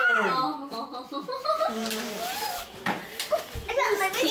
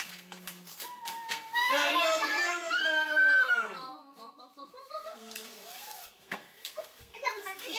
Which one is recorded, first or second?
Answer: first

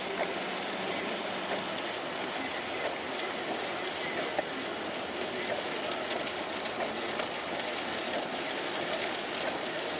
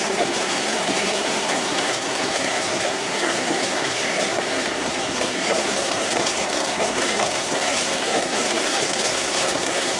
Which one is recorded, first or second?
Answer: first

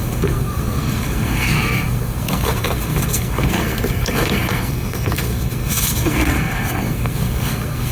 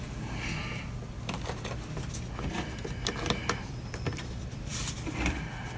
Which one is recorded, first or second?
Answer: second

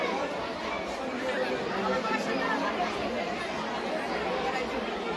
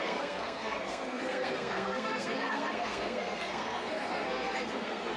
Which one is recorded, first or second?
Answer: first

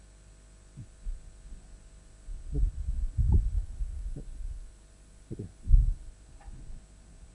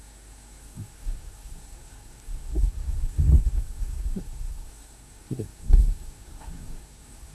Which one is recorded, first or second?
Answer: first